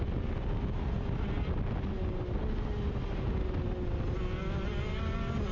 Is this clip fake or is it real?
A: real